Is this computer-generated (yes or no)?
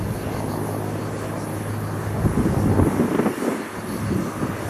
no